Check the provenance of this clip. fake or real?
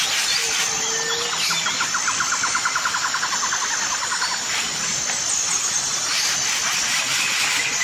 real